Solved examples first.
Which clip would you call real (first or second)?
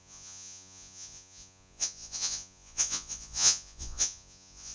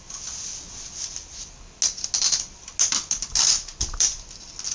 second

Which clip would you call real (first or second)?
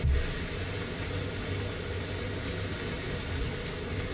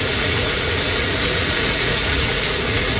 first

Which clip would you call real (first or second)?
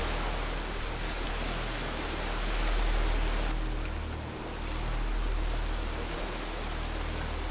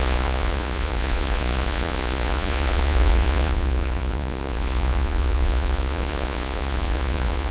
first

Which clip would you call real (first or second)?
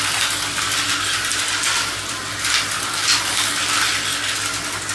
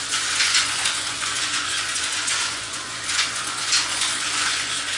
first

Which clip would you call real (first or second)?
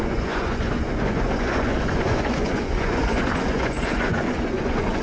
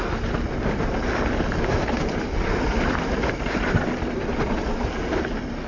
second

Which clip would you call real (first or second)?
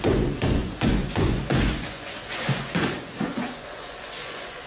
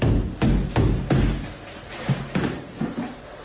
second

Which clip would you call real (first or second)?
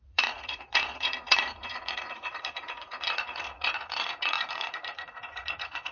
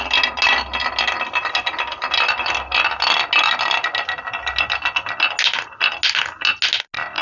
second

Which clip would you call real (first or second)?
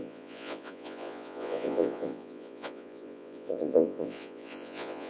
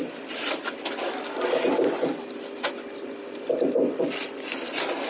second